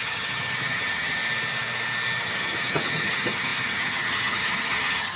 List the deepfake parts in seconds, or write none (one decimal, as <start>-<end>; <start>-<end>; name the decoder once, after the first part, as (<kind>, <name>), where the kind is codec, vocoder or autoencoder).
0.0-1.2 (vocoder, HiFi-GAN); 2.2-5.2